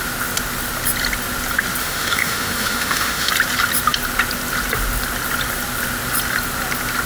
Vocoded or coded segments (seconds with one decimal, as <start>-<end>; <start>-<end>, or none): 1.8-3.3